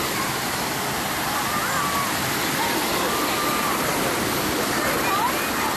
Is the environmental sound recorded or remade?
recorded